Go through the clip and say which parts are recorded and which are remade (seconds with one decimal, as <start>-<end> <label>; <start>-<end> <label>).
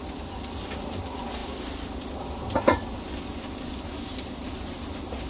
0.0-5.3 recorded